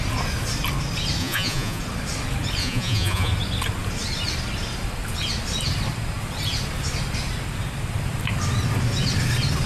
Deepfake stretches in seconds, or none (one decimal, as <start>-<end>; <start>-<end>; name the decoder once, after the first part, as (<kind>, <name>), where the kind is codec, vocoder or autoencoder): 1.2-1.8 (vocoder, Vocos); 2.6-3.3